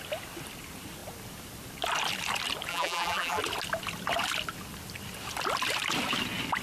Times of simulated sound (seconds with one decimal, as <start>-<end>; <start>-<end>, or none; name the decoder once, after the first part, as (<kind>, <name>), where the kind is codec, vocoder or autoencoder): 2.7-3.4 (vocoder, BigVGAN v2)